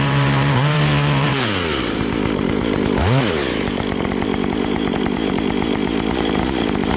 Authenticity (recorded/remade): remade